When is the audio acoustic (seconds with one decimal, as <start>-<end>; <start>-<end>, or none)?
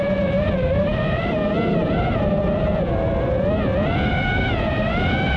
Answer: 0.0-5.4